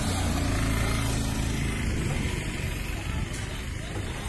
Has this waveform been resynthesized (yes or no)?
no